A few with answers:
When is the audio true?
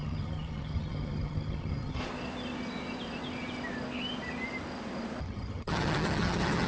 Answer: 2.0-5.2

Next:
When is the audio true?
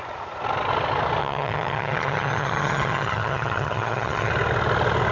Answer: 0.0-1.2; 4.3-5.1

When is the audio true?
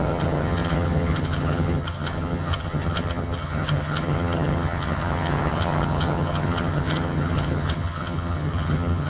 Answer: none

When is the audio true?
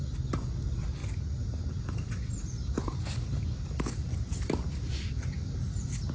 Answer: 0.0-6.1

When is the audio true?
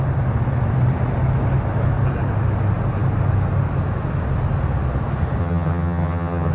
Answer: 0.0-5.4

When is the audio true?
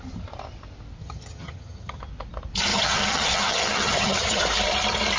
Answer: 0.0-1.0; 2.0-2.7; 4.4-5.2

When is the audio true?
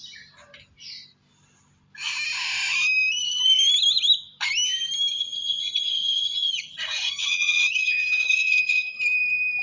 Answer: 0.0-5.1; 9.0-9.6